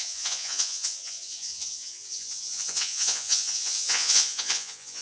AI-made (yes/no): yes